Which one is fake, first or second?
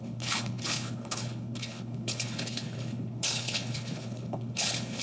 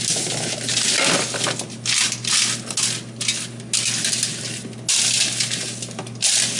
first